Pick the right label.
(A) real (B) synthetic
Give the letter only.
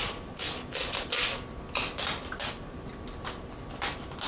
A